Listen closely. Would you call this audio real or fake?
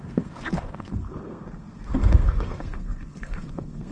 fake